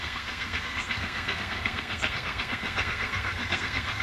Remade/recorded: remade